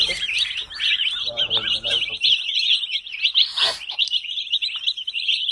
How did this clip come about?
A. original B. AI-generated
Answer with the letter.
B